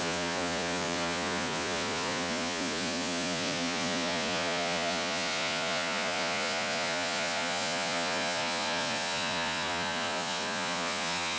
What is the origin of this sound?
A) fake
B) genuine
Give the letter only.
A